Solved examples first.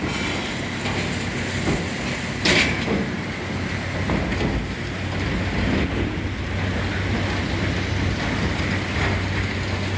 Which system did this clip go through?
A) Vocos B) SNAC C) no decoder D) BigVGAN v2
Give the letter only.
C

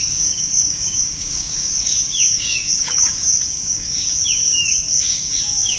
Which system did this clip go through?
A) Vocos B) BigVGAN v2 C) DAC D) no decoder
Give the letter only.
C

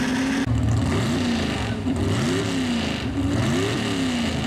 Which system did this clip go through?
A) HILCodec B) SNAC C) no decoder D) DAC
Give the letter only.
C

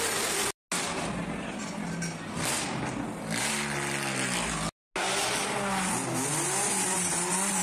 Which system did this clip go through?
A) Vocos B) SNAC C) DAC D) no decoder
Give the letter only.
D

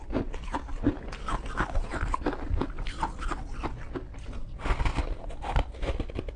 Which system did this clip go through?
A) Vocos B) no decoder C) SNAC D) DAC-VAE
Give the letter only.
B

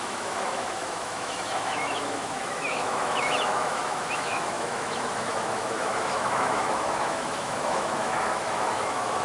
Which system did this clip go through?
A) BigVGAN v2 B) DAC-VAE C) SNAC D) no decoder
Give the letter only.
B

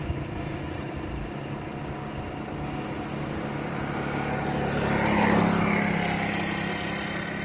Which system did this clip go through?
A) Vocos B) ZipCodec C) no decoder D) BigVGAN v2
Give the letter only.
C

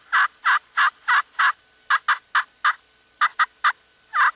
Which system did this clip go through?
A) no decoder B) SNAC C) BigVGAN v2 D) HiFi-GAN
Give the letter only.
A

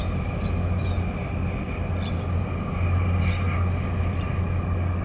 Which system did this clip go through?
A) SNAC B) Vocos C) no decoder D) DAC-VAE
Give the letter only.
C